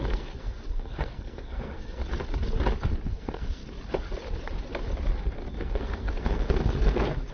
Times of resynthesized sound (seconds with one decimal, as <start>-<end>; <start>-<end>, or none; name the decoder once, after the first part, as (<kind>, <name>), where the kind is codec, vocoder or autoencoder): 0.0-2.0 (codec, SNAC); 3.1-3.6; 5.6-7.3